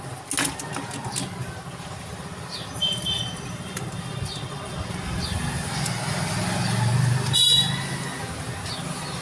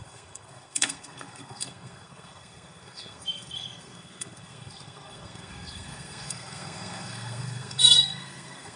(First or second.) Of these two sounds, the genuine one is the first